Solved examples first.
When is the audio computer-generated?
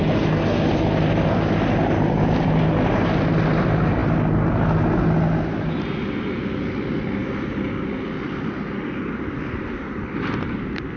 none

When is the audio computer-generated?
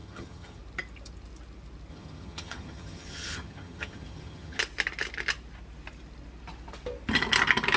0.0-0.6 (vocoder, HiFi-GAN); 1.9-4.6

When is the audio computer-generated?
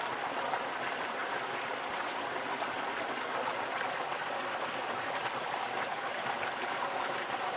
none